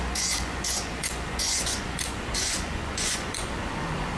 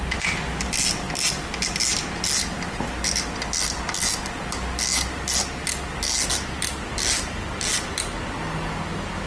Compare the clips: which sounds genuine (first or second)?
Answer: second